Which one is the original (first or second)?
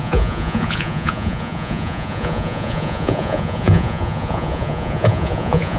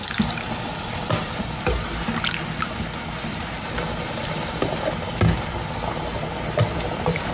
second